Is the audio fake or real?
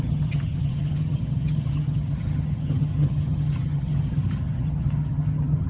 fake